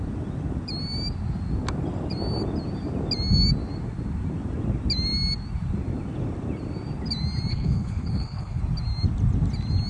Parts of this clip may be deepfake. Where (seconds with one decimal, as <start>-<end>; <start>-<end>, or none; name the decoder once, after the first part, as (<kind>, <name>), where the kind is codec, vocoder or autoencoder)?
7.5-8.6 (codec, HILCodec)